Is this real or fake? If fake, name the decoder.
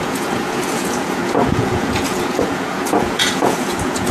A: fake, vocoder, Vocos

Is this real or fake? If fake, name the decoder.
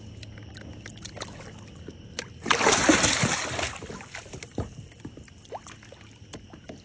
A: real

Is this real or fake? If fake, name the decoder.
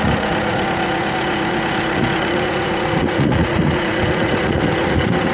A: fake, vocoder, Vocos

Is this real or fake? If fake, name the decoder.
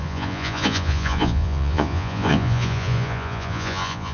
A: fake, vocoder, Vocos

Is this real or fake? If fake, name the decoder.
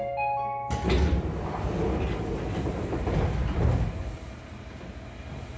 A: real